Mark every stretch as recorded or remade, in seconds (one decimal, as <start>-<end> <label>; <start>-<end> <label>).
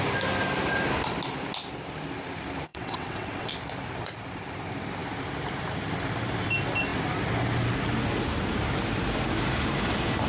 0.0-2.7 recorded; 2.7-3.5 remade; 3.5-10.3 recorded